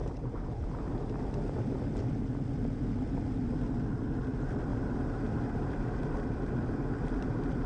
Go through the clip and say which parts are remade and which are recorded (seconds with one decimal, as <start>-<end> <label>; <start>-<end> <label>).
0.0-1.1 remade; 1.1-4.7 recorded; 4.7-7.7 remade